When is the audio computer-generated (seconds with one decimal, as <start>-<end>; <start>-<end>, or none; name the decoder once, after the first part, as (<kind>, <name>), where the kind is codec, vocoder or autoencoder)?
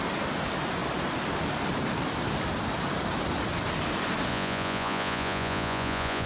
4.3-6.3 (vocoder, Vocos)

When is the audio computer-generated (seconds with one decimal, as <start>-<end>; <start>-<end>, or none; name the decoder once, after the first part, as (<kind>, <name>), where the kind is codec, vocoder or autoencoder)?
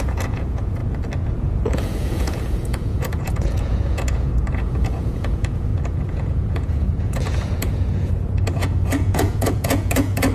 0.0-0.8 (vocoder, Vocos); 1.4-10.3